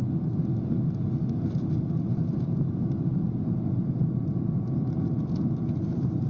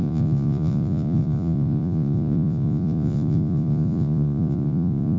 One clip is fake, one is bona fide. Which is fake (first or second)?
second